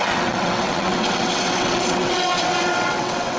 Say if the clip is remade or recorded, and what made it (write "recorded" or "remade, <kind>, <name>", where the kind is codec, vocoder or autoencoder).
remade, vocoder, WaveNeXt